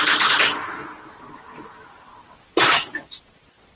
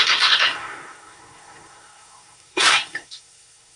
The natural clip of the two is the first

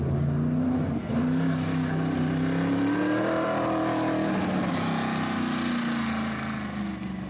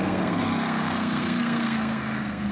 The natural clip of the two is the first